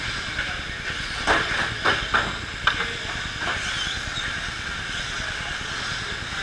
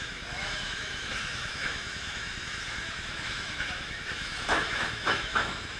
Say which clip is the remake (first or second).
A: second